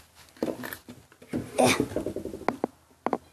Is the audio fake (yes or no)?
no